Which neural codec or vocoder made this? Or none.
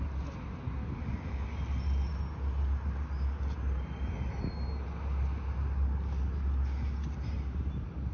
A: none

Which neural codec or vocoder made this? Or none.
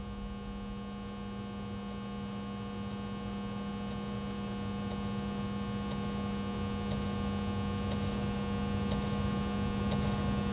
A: none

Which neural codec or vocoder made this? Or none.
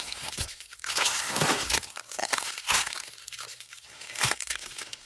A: codec, SNAC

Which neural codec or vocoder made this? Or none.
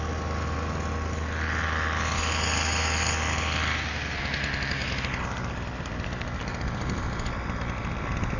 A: none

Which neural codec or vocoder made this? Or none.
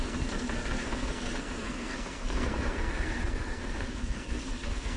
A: codec, SNAC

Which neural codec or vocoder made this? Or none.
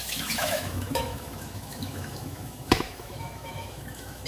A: autoencoder, DAC-VAE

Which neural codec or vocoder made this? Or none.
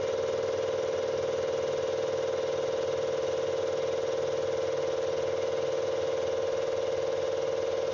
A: none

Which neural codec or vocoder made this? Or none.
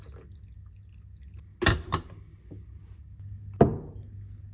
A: none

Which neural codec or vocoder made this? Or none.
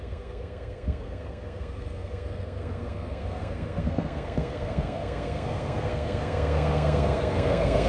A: codec, SNAC